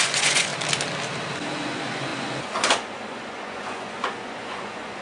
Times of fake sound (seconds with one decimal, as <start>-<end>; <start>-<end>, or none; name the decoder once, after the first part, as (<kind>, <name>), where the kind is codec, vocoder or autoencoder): 0.0-0.5 (vocoder, Vocos); 1.5-5.0